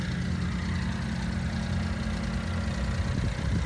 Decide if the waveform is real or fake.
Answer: real